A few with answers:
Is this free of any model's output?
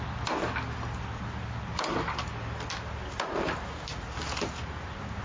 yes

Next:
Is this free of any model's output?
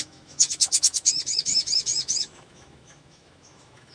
no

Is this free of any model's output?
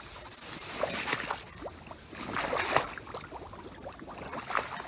yes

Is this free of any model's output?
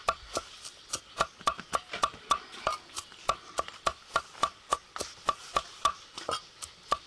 yes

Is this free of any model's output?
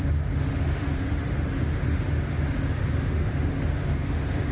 no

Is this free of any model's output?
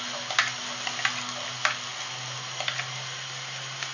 yes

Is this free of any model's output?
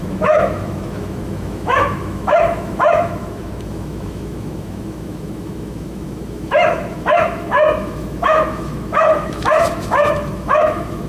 no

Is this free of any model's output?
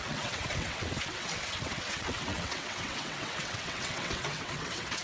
no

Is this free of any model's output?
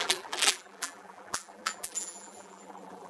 no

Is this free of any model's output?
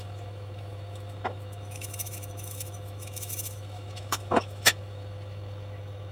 no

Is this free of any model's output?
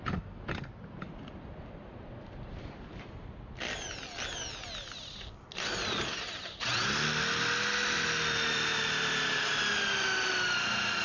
yes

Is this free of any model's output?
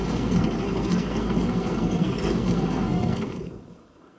no